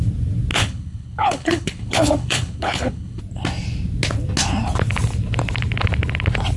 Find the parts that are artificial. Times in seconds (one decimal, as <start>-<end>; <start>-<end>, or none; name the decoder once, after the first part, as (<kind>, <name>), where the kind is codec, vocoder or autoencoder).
0.5-3.2 (codec, HILCodec)